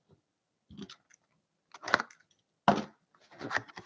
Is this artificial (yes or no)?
no